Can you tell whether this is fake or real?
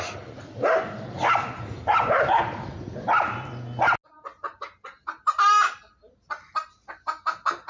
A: real